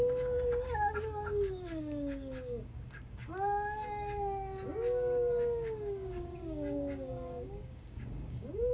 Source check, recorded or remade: remade